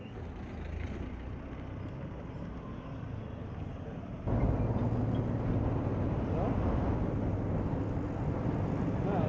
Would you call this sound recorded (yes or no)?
yes